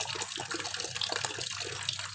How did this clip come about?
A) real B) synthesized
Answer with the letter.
A